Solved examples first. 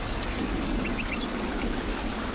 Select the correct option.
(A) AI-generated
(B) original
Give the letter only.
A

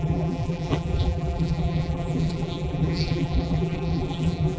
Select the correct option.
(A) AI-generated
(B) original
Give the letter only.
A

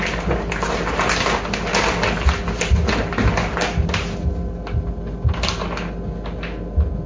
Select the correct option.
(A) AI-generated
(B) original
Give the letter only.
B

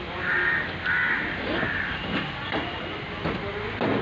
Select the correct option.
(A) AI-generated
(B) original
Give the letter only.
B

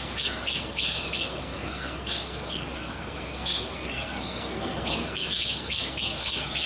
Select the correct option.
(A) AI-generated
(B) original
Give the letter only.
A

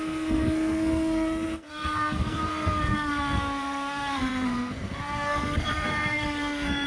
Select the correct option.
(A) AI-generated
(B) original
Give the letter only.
A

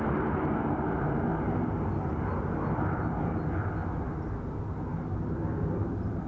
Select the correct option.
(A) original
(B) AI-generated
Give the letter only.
A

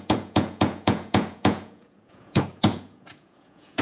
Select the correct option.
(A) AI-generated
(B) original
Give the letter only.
A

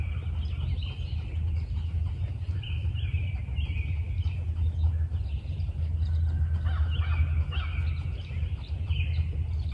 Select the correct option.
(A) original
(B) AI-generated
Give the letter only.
A